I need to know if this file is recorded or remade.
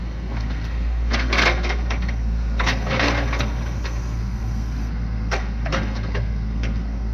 remade